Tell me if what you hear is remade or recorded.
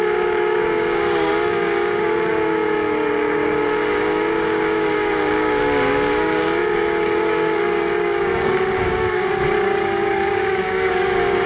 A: remade